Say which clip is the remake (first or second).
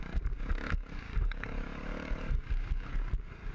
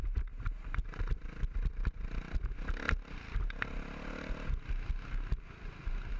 first